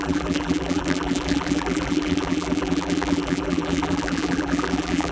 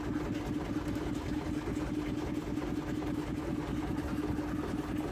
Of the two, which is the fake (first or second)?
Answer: first